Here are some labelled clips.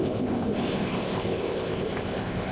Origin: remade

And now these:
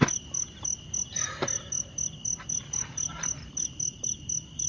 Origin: recorded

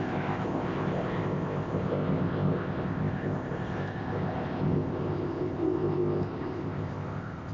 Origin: remade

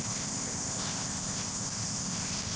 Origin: remade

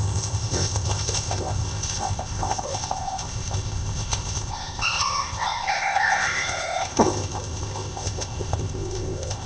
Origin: remade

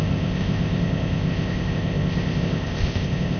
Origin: remade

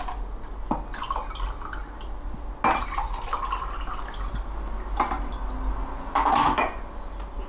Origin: recorded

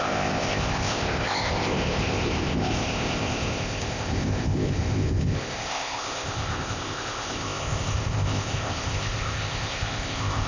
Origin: remade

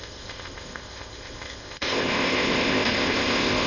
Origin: remade